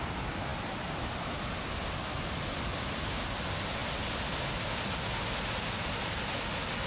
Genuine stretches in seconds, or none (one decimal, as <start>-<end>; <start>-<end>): 0.0-6.9